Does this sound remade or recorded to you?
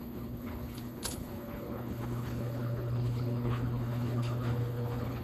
remade